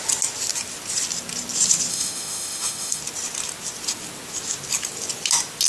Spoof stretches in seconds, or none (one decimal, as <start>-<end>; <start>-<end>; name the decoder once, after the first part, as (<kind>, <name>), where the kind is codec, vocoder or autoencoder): 1.9-3.0 (autoencoder, DAC-VAE)